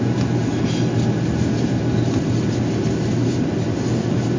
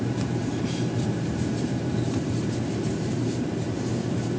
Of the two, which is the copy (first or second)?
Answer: second